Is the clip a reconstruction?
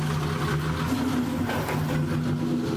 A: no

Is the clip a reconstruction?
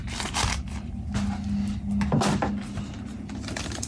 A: no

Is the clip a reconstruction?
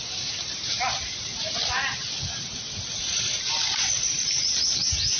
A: no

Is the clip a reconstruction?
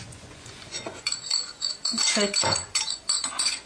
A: yes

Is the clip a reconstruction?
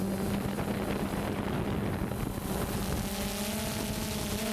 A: no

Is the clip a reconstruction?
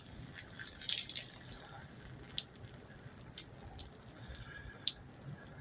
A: yes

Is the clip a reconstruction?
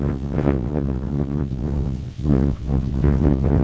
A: yes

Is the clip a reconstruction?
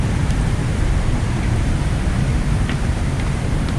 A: yes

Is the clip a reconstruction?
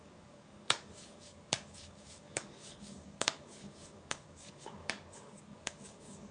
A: yes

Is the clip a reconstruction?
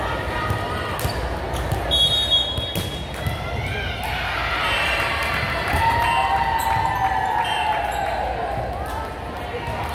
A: no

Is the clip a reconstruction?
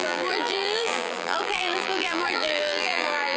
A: yes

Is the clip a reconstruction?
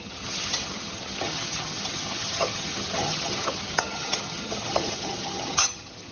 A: yes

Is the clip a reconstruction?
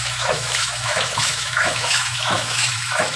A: yes